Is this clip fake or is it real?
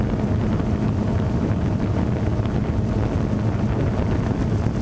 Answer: real